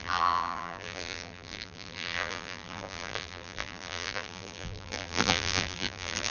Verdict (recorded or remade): remade